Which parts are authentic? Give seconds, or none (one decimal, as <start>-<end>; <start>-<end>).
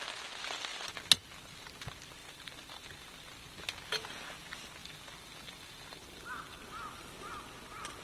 0.0-2.2; 3.3-4.8; 6.6-8.0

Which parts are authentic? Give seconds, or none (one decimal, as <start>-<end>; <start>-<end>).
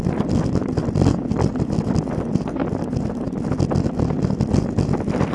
0.0-5.3